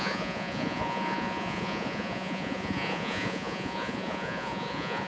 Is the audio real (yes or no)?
no